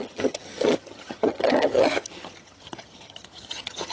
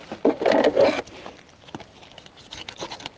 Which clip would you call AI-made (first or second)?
first